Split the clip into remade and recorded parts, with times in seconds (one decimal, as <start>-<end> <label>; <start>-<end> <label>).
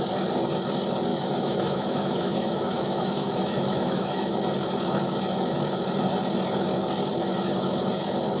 0.0-1.1 recorded; 1.1-4.3 remade; 4.3-8.4 recorded